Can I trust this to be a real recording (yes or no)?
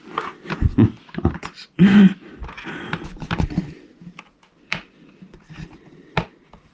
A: yes